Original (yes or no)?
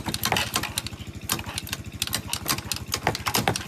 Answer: yes